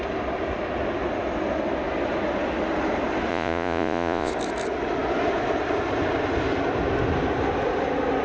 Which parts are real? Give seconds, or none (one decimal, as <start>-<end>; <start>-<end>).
0.0-3.3; 4.3-8.2